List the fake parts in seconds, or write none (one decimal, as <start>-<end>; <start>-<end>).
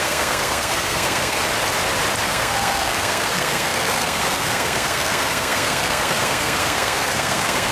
0.0-1.4; 2.2-7.7